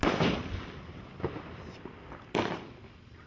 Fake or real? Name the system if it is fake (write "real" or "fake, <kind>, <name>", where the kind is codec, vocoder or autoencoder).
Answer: real